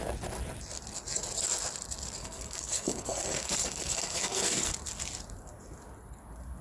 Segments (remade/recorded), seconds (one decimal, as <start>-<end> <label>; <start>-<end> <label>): 0.0-2.2 recorded; 2.2-4.7 remade; 4.7-6.6 recorded